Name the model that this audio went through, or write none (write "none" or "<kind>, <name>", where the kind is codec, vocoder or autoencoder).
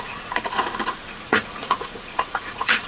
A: vocoder, Vocos